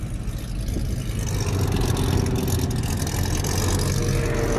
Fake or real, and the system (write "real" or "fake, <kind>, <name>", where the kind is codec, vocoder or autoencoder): real